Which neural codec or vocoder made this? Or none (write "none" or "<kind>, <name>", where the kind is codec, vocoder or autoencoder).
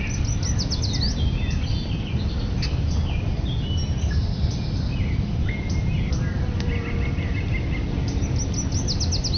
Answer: none